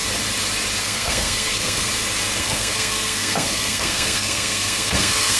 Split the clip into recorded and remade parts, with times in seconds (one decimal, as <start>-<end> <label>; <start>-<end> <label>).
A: 0.0-0.8 recorded; 0.8-1.9 remade; 1.9-2.4 recorded; 2.4-5.4 remade